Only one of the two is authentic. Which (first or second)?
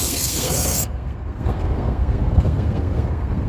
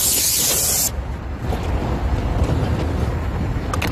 second